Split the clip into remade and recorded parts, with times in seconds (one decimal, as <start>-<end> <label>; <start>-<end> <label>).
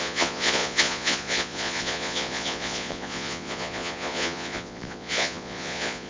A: 0.0-6.1 remade